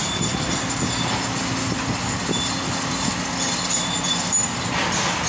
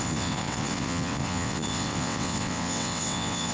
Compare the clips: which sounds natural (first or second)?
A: first